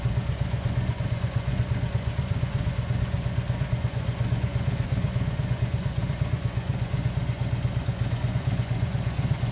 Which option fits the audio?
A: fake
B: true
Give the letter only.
A